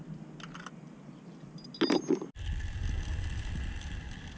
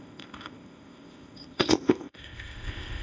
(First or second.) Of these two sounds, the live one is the first